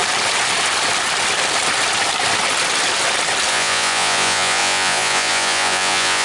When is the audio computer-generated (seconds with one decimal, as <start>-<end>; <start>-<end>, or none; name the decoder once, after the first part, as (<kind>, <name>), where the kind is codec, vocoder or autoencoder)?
3.5-6.2 (vocoder, Vocos)